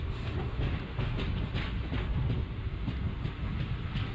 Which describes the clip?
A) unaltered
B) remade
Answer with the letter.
A